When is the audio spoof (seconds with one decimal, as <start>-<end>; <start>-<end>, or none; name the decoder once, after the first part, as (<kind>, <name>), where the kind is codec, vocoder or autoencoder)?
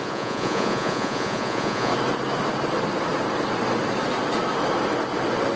0.0-1.9 (vocoder, Vocos)